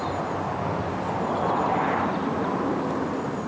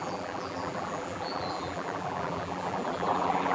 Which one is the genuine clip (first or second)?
first